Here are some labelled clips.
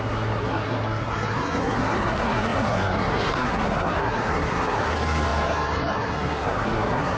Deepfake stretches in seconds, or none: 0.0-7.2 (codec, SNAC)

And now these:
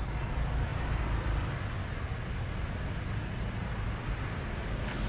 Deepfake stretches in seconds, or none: none

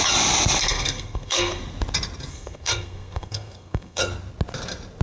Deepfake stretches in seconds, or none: 0.6-1.6 (codec, SNAC); 2.3-4.0

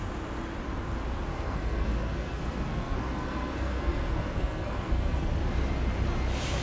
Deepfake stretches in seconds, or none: 1.3-5.3 (codec, SNAC)

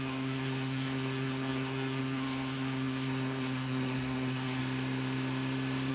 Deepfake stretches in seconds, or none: 0.0-4.6 (codec, SNAC)

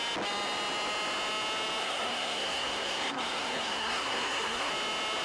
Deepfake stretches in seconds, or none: 1.8-4.7 (codec, SNAC)

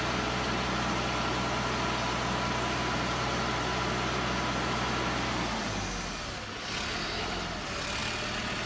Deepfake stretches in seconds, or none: none